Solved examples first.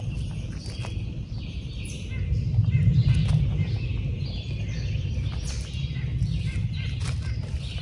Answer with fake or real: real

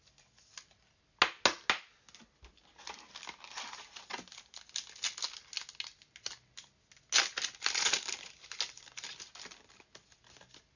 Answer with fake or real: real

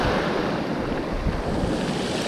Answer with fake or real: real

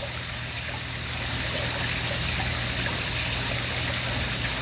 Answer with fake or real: real